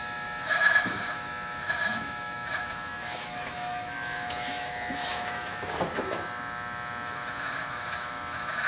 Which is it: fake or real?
fake